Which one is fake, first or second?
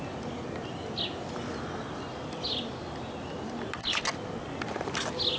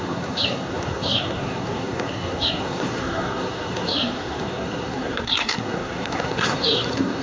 second